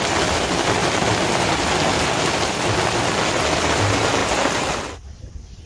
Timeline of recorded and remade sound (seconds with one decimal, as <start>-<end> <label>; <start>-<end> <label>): 0.0-5.7 recorded